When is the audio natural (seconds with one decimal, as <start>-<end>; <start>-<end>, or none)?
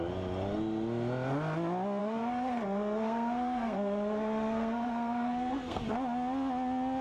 0.0-2.0; 5.8-7.0